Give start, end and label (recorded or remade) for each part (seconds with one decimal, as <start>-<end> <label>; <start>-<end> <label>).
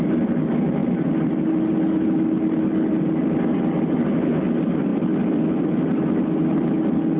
0.0-7.2 recorded